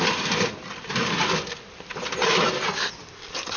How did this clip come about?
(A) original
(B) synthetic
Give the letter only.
A